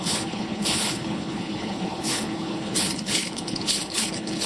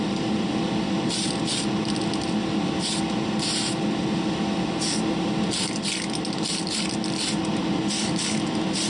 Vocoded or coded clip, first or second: first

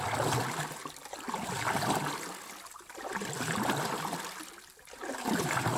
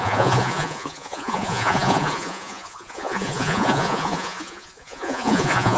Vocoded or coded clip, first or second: second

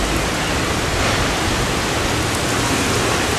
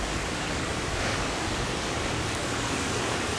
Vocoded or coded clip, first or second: second